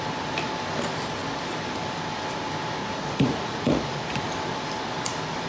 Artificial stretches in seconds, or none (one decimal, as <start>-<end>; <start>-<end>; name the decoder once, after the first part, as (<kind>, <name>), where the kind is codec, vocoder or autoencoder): 2.8-4.0 (vocoder, Vocos)